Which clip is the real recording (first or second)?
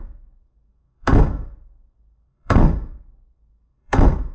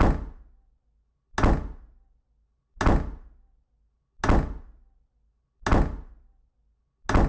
second